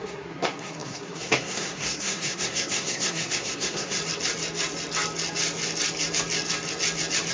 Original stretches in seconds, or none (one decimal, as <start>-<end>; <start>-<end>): 4.0-7.3